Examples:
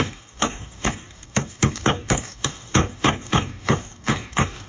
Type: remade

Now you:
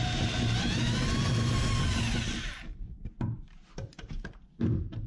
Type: recorded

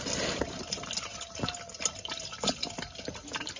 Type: recorded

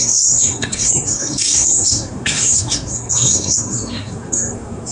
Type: remade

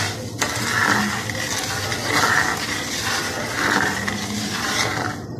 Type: recorded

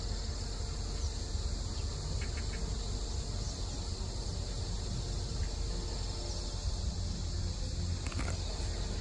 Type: recorded